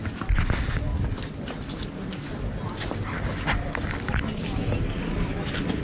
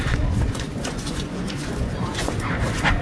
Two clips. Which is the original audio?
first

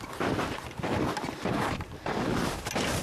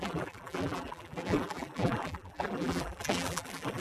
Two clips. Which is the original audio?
first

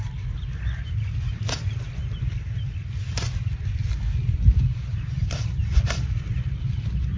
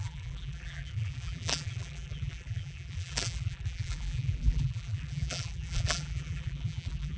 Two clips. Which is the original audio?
first